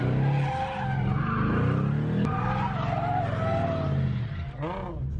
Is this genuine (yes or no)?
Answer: yes